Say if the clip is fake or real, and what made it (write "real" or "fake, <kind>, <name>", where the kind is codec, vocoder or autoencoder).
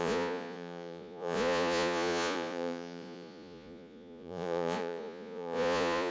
fake, vocoder, Vocos